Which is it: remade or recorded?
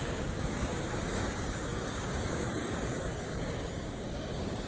remade